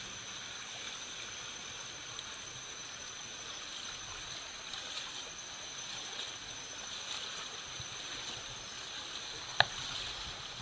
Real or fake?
real